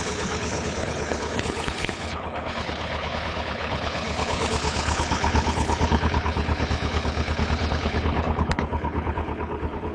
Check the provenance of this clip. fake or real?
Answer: fake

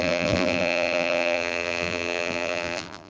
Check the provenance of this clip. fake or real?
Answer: fake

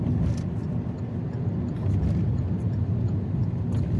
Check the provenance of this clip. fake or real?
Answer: real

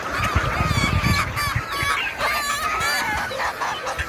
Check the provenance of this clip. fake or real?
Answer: real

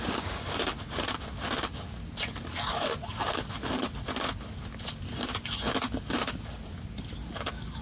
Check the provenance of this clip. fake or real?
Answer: fake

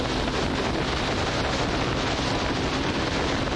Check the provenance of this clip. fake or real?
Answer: real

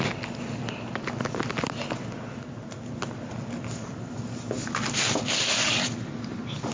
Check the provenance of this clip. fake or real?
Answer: real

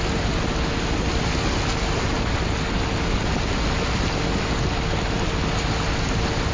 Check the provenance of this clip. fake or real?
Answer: real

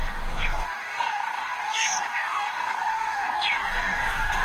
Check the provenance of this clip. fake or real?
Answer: fake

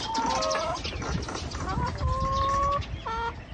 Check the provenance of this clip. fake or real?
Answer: real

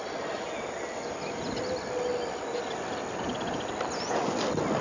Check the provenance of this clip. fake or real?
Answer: real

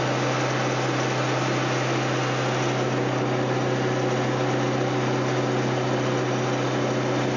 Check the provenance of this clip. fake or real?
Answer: real